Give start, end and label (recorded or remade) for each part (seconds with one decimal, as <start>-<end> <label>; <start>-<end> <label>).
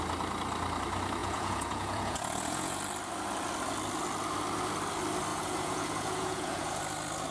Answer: 0.0-1.2 recorded; 1.2-2.8 remade; 2.8-5.3 recorded; 5.3-6.8 remade; 6.8-7.3 recorded